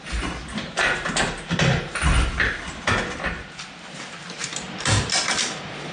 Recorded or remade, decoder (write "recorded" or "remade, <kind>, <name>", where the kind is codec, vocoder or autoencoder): recorded